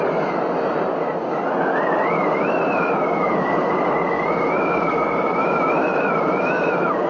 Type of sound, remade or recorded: recorded